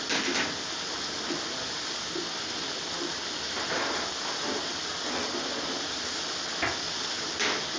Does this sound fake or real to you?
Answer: real